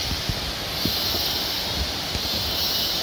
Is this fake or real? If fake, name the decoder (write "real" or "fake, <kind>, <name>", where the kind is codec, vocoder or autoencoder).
real